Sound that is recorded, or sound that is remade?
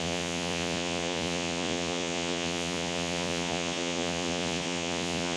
remade